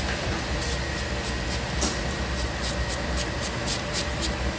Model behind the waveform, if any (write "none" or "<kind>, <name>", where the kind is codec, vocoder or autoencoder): none